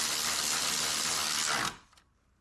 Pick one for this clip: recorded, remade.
recorded